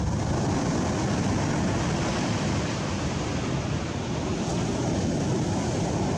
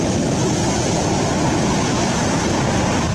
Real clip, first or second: second